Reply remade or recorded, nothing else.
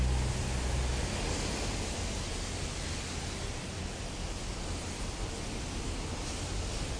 recorded